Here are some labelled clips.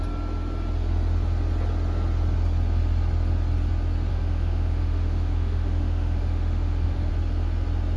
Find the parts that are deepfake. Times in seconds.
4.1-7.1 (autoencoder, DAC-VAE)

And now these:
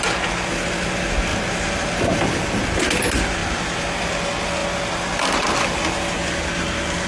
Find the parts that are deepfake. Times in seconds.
none

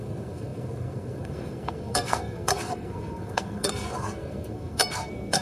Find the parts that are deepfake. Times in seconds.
0.0-5.4 (codec, SNAC)

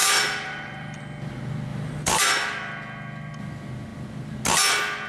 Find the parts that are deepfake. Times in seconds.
0.0-1.0 (vocoder, BigVGAN v2); 1.7-2.2